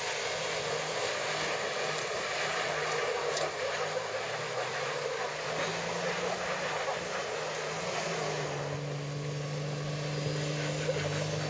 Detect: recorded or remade recorded